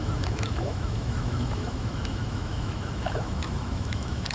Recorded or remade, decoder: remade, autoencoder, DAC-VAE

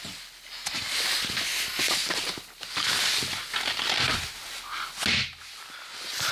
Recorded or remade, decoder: recorded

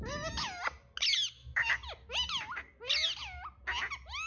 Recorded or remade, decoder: recorded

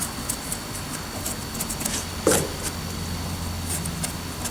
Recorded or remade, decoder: recorded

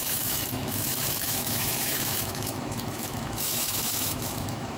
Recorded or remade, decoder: remade, autoencoder, DAC-VAE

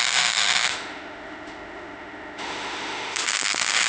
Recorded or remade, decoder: remade, autoencoder, DAC-VAE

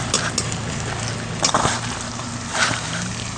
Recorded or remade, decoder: recorded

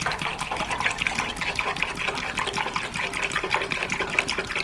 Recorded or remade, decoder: recorded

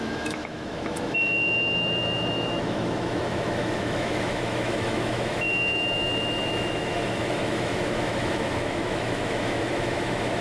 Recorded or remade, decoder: remade, autoencoder, DAC-VAE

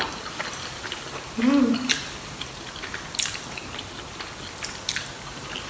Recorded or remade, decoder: recorded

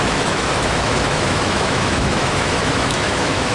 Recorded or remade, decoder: remade, autoencoder, DAC-VAE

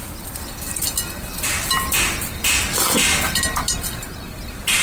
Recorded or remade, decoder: recorded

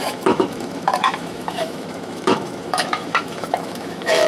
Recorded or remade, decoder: remade, autoencoder, DAC-VAE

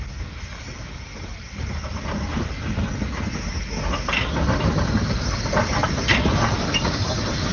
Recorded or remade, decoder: recorded